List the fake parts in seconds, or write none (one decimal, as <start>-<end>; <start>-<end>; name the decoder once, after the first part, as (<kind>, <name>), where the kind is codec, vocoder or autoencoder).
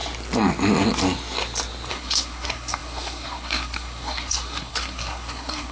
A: 1.9-5.7 (codec, SNAC)